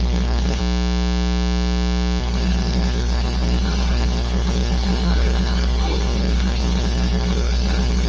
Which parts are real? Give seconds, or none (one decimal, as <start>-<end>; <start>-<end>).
0.6-2.2